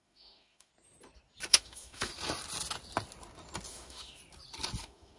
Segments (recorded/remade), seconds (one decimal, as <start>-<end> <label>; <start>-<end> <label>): 0.0-0.7 remade; 0.7-1.5 recorded; 1.5-2.1 remade; 2.1-3.7 recorded; 3.7-4.2 remade; 4.2-4.8 recorded; 4.8-5.2 remade